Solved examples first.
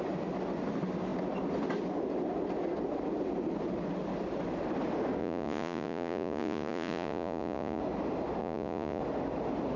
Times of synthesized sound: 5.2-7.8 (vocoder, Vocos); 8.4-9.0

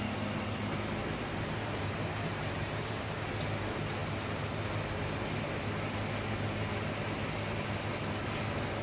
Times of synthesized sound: 1.0-3.0 (vocoder, BigVGAN v2)

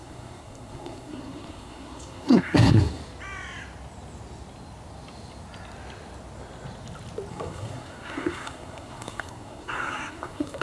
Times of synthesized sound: 0.0-3.0 (codec, SNAC); 7.3-10.6

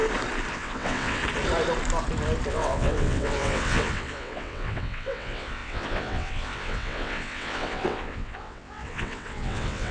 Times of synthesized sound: 0.5-1.2 (vocoder, WaveNeXt); 2.5-9.9

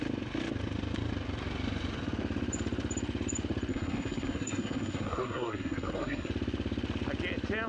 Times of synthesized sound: 3.7-6.3 (codec, SNAC)

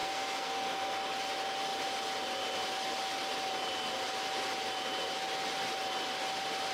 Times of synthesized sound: 0.0-1.0 (codec, SNAC)